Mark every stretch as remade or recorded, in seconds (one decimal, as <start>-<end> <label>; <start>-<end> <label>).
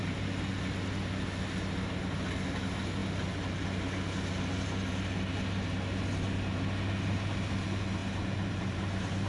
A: 0.0-8.0 recorded; 8.0-9.3 remade